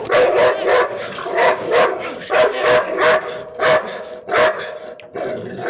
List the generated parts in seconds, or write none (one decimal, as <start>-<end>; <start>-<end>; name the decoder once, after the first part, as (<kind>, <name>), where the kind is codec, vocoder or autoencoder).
0.7-4.1 (codec, DAC)